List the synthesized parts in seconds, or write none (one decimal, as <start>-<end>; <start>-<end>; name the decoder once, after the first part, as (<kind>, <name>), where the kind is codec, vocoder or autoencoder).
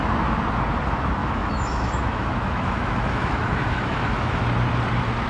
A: 1.2-4.4 (autoencoder, DAC-VAE)